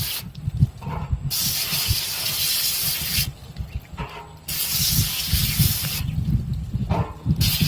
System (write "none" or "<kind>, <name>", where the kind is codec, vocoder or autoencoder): none